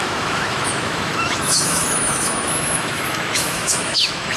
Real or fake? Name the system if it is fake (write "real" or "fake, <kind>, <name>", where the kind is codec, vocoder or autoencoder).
fake, autoencoder, DAC-VAE